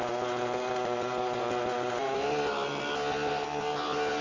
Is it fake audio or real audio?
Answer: real